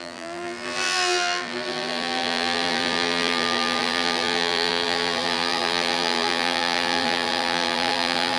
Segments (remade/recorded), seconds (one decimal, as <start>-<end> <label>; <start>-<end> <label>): 0.0-8.4 remade